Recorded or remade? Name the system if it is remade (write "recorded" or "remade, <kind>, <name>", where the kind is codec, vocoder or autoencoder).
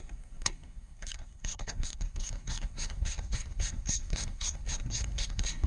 remade, codec, SNAC